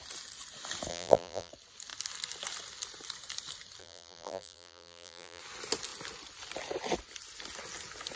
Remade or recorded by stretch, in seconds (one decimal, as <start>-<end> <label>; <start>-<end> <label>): 0.0-0.9 recorded; 0.9-1.5 remade; 1.5-3.8 recorded; 3.8-5.4 remade; 5.4-8.2 recorded